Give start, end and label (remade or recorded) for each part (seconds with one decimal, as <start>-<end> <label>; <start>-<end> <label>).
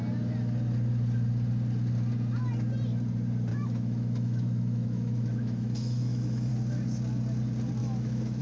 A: 0.0-3.5 recorded; 3.5-6.5 remade; 6.5-7.8 recorded; 7.8-8.4 remade